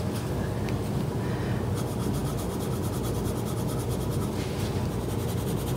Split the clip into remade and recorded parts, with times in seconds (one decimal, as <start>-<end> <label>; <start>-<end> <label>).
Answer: 0.0-5.8 recorded